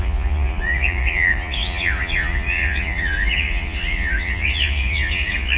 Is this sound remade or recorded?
remade